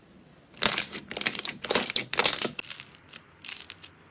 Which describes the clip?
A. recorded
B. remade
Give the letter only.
A